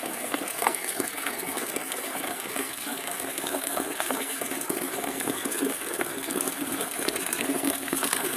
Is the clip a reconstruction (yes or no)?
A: yes